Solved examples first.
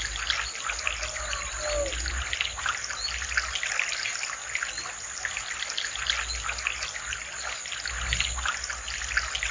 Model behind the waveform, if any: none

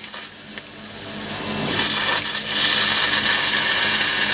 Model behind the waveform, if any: none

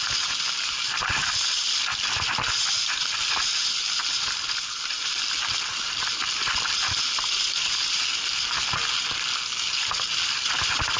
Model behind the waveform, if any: none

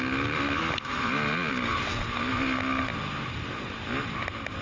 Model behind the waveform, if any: none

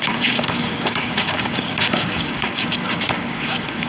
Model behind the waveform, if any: codec, DAC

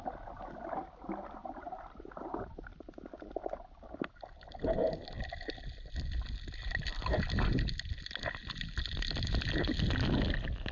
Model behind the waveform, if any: none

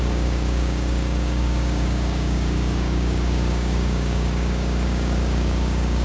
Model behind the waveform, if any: codec, DAC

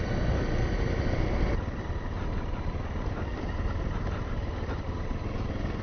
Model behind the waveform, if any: none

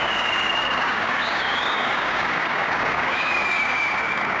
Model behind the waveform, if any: codec, DAC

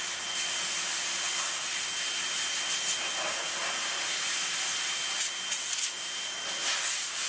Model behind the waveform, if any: none